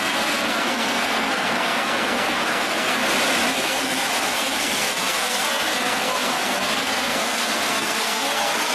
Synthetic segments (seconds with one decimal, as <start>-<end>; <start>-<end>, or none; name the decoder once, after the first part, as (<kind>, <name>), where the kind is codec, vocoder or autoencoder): 0.0-3.0 (codec, SNAC); 3.5-8.7